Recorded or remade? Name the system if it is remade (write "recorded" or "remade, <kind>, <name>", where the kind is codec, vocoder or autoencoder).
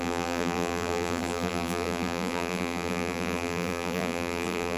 remade, vocoder, BigVGAN v2